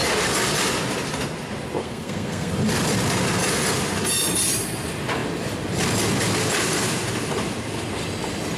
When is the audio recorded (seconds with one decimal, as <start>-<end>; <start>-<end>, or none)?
0.0-1.8; 2.5-8.6